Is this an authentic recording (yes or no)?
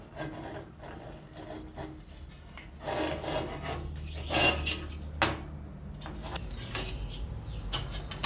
yes